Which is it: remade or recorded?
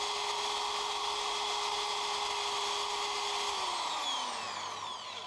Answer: recorded